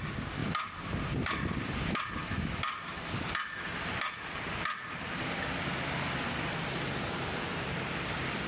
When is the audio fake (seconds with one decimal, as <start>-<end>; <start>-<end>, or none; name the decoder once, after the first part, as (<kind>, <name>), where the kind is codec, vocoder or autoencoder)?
none